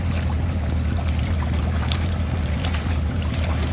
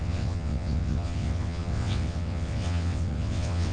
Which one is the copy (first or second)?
second